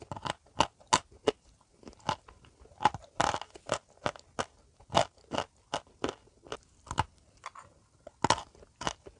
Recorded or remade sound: recorded